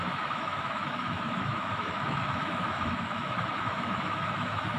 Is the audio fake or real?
fake